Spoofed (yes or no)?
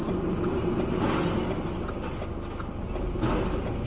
no